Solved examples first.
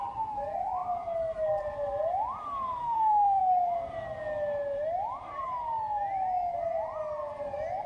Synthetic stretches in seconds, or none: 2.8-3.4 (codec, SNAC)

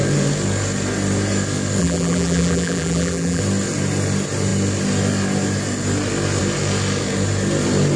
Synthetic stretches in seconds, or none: 1.8-3.4 (vocoder, BigVGAN v2)

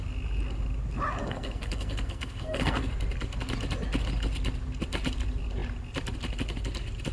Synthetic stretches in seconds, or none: 1.2-2.9 (codec, SNAC)

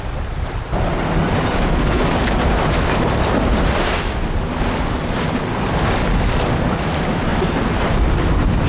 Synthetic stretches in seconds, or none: none

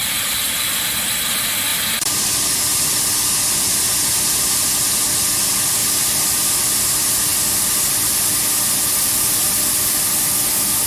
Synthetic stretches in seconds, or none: 5.8-6.6 (vocoder, BigVGAN v2)